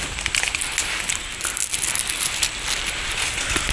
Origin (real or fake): real